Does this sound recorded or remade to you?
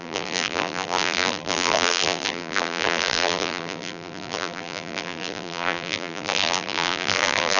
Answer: remade